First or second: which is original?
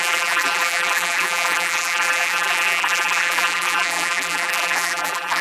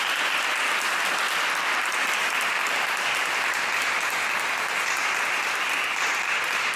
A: second